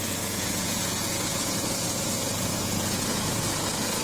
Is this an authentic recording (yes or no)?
no